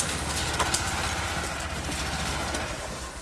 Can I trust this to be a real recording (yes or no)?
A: yes